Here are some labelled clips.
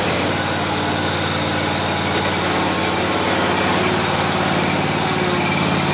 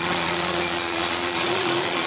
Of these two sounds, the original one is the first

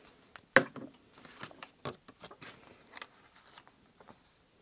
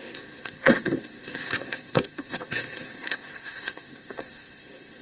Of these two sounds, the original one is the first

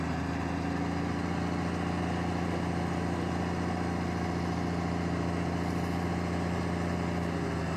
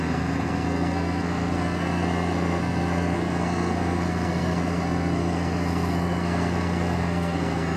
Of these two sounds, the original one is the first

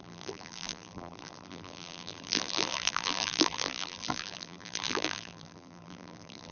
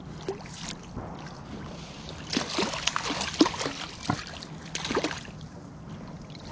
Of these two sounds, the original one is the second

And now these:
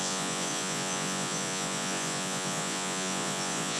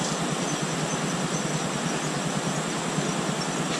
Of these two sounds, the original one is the second